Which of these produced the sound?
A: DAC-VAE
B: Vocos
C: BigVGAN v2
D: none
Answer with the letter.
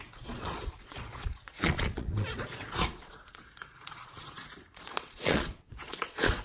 B